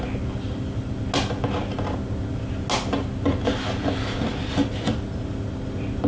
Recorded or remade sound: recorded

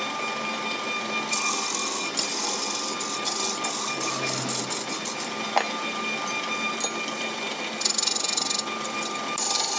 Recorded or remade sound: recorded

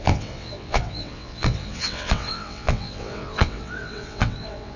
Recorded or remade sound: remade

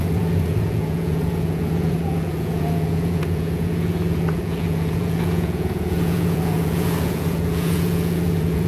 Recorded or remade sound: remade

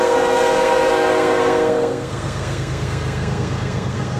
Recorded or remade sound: remade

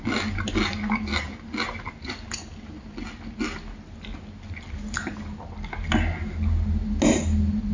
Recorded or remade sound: recorded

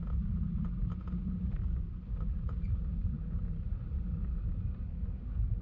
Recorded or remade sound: recorded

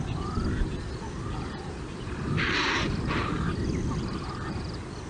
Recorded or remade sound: remade